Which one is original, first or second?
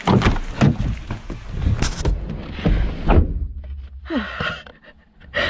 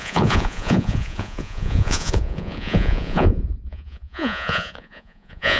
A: first